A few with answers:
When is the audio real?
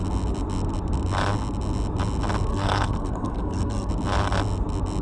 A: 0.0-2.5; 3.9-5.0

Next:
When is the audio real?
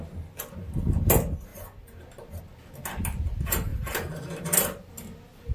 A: 0.0-3.7; 4.9-5.5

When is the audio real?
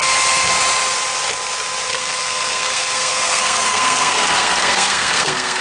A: 0.0-1.9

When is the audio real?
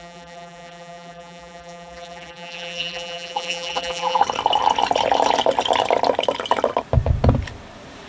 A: 4.2-8.1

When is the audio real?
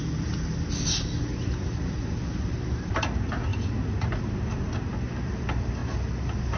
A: 0.0-6.6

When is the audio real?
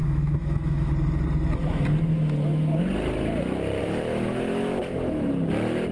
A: 0.9-2.1; 2.8-3.8; 5.3-5.9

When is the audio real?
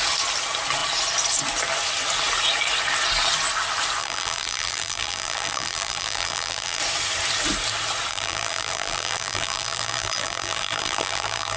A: 0.0-4.0; 6.8-8.1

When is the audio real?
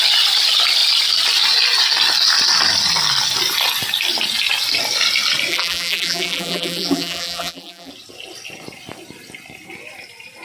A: 0.0-5.5; 7.9-10.4